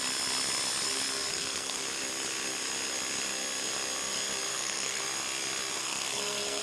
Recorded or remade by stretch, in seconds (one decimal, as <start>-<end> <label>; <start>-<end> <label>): 0.0-1.3 recorded; 1.3-1.8 remade; 1.8-4.5 recorded; 4.5-5.0 remade; 5.0-5.8 recorded; 5.8-6.6 remade